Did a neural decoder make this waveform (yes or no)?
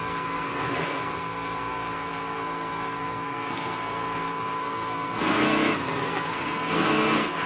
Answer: yes